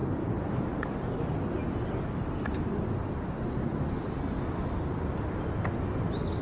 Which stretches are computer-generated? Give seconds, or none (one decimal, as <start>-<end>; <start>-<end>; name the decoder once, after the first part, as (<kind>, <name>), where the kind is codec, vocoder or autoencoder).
0.0-1.1 (vocoder, BigVGAN v2)